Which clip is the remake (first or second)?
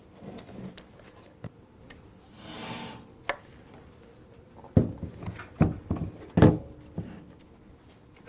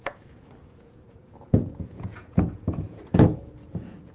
second